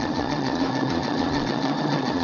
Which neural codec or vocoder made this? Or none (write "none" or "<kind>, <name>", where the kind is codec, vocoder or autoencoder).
vocoder, Vocos